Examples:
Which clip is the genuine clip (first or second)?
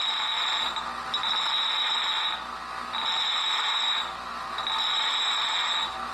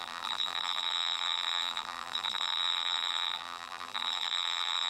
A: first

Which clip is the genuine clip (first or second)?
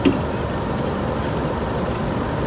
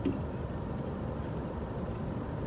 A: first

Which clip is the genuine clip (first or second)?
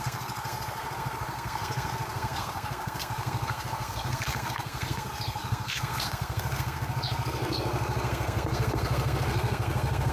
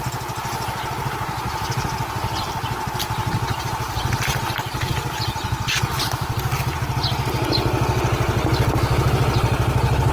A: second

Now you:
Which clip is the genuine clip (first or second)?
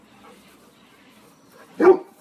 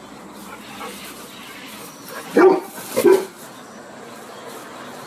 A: second